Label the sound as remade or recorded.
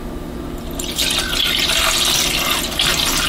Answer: recorded